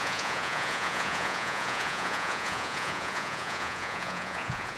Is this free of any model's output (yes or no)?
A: no